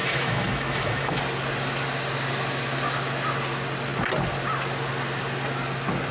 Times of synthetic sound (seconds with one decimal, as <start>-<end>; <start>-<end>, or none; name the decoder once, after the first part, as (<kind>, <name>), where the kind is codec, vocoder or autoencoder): 0.0-1.2 (autoencoder, DAC-VAE)